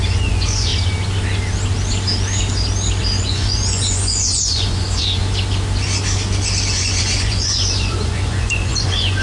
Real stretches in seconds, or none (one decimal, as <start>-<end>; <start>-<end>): 0.7-3.2; 5.2-6.7